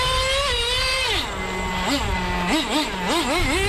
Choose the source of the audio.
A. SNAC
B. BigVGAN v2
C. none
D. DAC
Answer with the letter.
C